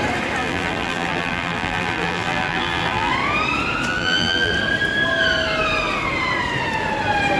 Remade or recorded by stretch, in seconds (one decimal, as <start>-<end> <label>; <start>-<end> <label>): 0.0-0.4 recorded; 0.4-3.1 remade; 3.1-3.9 recorded; 3.9-4.5 remade; 4.5-7.4 recorded